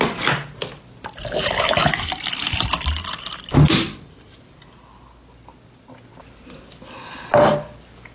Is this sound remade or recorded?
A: recorded